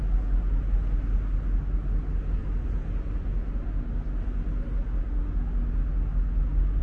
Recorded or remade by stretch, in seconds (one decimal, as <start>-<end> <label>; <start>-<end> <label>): 0.0-6.8 recorded